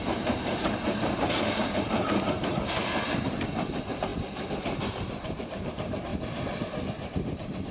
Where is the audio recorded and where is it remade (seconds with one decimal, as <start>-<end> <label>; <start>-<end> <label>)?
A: 0.0-6.1 remade; 6.1-6.6 recorded; 6.6-7.7 remade